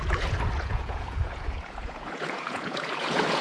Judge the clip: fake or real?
fake